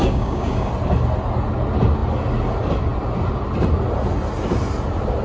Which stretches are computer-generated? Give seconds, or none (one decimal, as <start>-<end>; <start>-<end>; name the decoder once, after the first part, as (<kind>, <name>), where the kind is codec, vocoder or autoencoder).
0.0-0.7 (codec, DAC)